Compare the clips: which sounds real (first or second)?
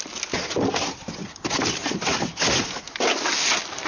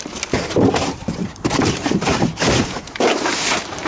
first